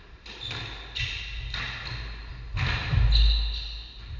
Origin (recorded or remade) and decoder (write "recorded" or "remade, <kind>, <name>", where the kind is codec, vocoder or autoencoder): recorded